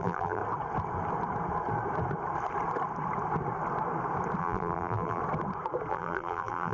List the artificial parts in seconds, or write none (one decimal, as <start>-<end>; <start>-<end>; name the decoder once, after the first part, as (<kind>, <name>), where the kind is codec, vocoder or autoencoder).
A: 0.0-0.4 (vocoder, BigVGAN v2); 4.4-5.2; 5.9-6.7